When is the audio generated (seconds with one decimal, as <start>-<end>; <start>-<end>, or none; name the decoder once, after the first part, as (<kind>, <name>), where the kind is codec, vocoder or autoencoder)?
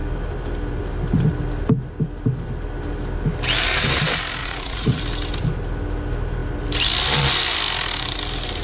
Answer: 4.4-5.0 (vocoder, Vocos)